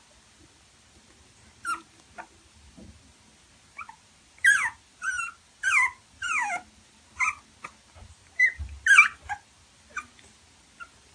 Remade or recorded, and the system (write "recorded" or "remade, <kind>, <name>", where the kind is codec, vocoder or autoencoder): recorded